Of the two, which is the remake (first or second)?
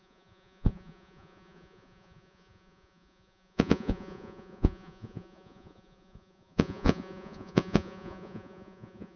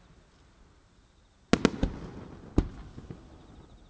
first